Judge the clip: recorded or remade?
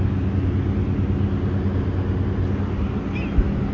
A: recorded